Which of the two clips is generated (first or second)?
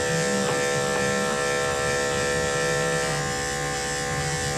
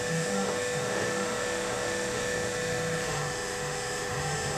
second